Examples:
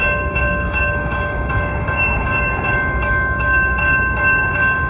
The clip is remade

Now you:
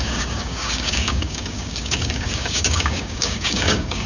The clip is remade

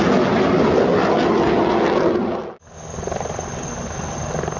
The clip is recorded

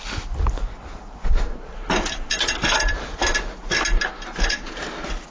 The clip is recorded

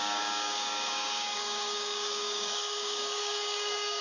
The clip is remade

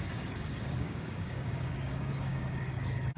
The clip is remade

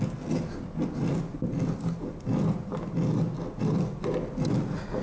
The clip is recorded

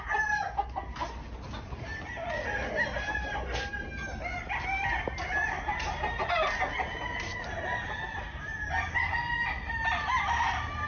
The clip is recorded